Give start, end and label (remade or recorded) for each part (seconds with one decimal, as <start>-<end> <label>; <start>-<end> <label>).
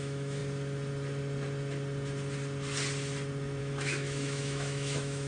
0.0-0.4 remade; 0.4-3.6 recorded; 3.6-5.3 remade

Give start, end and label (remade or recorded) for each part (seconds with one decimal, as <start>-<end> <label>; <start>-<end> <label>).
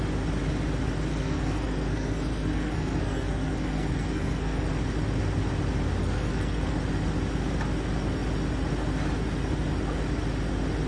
0.0-1.1 recorded; 1.1-4.7 remade; 4.7-6.0 recorded; 6.0-6.7 remade; 6.7-10.9 recorded